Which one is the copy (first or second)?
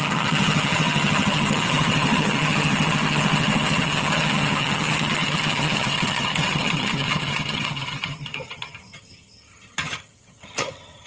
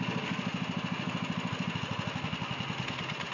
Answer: first